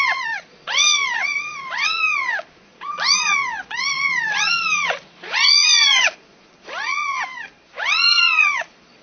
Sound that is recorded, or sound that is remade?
remade